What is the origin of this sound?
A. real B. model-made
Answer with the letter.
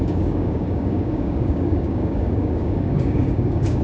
B